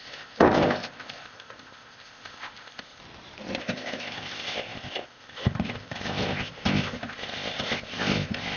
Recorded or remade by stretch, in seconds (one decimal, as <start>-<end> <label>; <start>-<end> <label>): 0.0-3.0 remade; 3.0-3.6 recorded; 3.6-8.6 remade